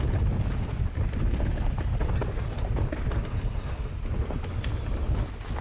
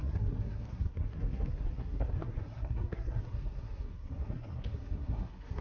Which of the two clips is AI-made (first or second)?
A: second